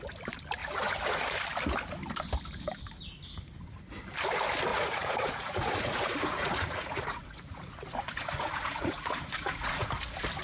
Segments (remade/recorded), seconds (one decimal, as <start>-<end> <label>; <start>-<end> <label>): 0.0-0.6 recorded; 0.6-1.2 remade; 1.2-4.7 recorded; 4.7-9.9 remade; 9.9-10.4 recorded